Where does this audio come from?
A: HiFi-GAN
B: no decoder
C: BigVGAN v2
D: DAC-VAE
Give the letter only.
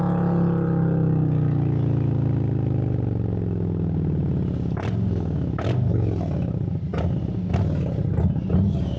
B